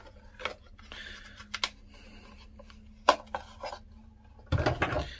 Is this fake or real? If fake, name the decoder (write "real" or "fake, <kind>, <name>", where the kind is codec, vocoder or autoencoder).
real